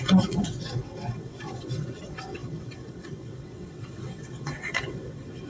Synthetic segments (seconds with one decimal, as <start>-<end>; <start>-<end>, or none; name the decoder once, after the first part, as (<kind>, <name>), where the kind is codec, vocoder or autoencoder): 0.0-5.5 (vocoder, WaveNeXt)

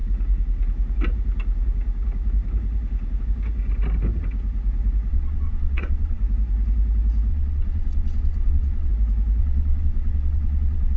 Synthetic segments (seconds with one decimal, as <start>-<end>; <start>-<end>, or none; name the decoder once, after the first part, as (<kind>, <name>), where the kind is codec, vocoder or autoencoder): 5.1-6.2 (vocoder, WaveNeXt); 7.3-8.9; 9.4-11.0